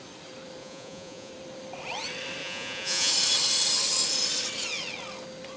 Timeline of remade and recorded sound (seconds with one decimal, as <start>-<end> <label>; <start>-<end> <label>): 0.0-0.6 recorded; 0.6-1.3 remade; 1.3-2.4 recorded; 2.4-3.1 remade; 3.1-5.6 recorded